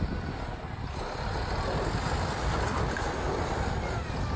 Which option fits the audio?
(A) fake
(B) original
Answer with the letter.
B